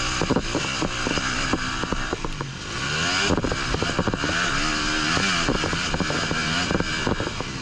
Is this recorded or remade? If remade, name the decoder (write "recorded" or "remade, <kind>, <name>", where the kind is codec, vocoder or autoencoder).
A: recorded